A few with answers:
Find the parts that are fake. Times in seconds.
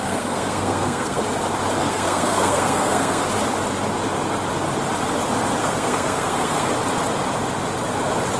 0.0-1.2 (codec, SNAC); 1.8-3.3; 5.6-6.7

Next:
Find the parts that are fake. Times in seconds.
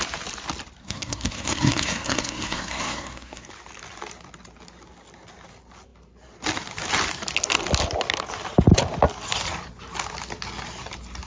0.8-3.5 (codec, SNAC)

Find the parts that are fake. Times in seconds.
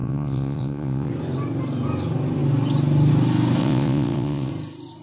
0.0-1.1 (vocoder, WaveNeXt); 3.6-4.5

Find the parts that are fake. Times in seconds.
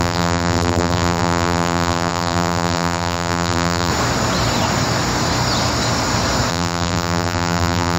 0.0-3.9 (vocoder, BigVGAN v2); 6.5-8.0